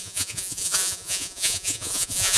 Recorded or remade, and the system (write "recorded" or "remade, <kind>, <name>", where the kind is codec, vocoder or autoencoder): remade, vocoder, Vocos